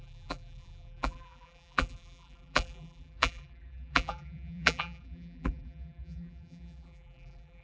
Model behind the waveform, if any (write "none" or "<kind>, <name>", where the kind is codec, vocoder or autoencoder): vocoder, BigVGAN v2